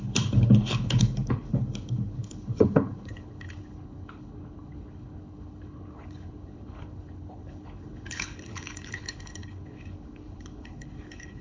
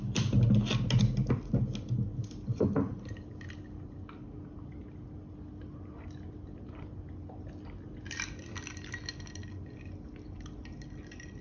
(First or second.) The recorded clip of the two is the second